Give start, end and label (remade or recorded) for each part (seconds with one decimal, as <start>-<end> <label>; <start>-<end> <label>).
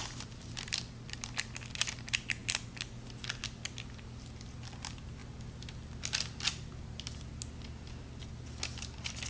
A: 0.0-9.3 recorded